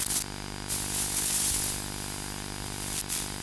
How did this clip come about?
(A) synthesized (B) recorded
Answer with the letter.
B